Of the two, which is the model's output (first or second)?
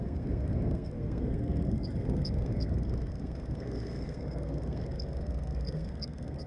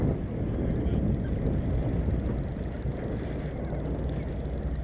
first